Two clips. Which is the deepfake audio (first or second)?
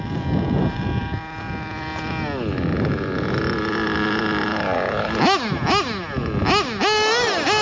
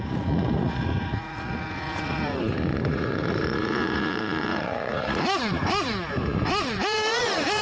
second